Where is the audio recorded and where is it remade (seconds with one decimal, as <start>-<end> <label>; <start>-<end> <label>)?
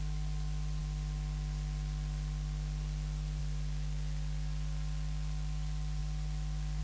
0.0-6.8 recorded